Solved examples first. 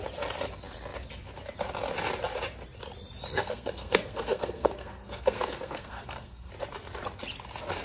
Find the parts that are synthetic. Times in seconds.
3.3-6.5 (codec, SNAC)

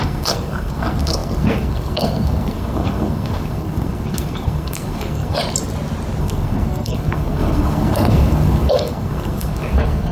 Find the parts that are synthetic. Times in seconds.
0.0-5.4 (codec, SNAC); 6.2-10.1

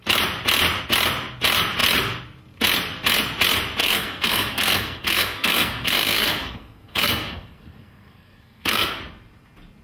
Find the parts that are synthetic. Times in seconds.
3.8-9.0 (codec, SNAC)

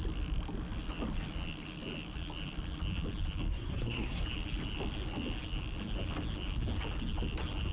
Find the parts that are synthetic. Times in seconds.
3.5-4.2 (codec, SNAC)

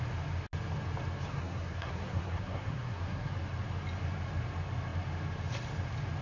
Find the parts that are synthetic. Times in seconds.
1.3-3.3 (codec, SNAC)